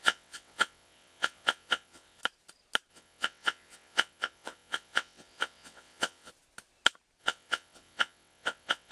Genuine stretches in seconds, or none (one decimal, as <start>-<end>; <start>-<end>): 2.2-2.9; 6.3-7.2